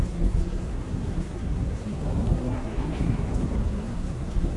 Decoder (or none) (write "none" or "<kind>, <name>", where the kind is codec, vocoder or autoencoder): codec, SNAC